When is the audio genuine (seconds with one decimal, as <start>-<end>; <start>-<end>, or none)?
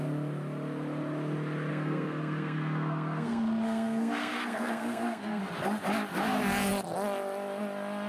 0.0-1.7; 5.4-8.1